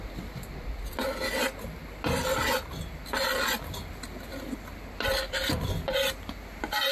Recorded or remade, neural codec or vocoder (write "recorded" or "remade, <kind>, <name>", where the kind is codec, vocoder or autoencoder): recorded